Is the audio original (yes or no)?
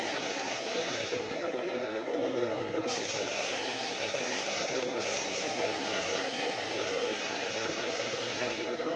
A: no